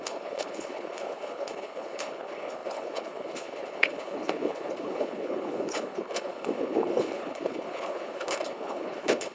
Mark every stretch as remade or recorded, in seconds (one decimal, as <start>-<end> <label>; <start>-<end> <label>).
0.0-9.3 remade